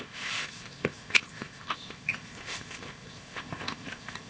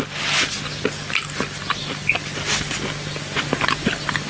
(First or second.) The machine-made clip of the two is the first